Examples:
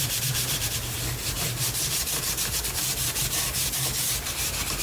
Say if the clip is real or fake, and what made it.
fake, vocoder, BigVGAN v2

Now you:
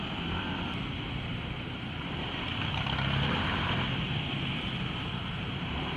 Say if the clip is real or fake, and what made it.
fake, vocoder, BigVGAN v2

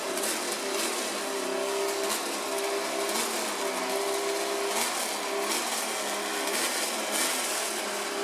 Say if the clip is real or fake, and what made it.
real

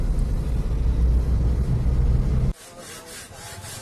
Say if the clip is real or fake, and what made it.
real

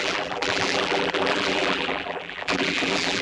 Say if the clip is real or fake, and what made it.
fake, vocoder, BigVGAN v2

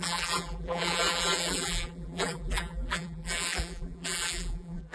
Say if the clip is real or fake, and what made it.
fake, vocoder, BigVGAN v2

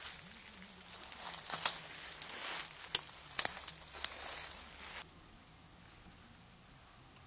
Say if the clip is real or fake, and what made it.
real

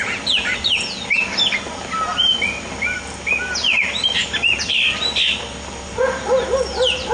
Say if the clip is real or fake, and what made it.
real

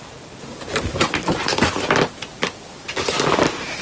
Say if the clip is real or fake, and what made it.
real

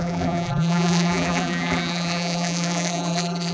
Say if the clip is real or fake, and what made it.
fake, vocoder, BigVGAN v2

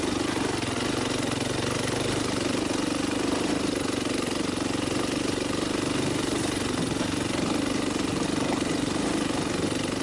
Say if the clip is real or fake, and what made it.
real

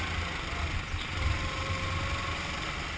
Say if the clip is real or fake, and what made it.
real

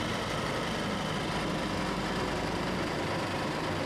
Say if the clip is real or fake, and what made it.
real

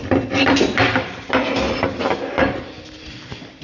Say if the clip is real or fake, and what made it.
fake, vocoder, BigVGAN v2